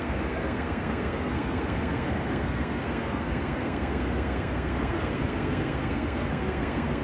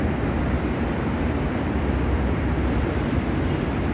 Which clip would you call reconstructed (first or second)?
first